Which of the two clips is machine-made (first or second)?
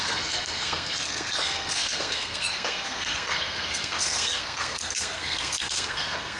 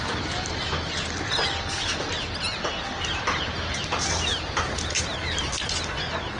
first